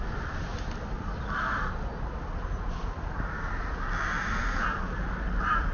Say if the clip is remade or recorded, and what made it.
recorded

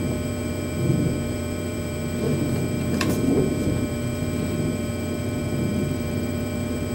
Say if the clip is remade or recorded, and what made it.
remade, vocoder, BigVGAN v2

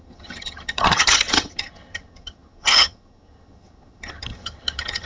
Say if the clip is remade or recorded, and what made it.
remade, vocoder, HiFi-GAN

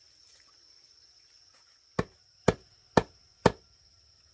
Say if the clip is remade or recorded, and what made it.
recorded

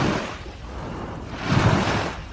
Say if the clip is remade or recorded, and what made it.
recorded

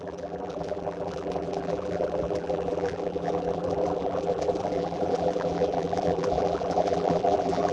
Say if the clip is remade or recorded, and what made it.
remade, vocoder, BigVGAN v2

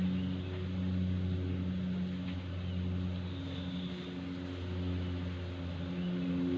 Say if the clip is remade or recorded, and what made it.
recorded